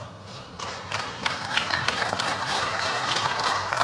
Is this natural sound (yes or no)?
no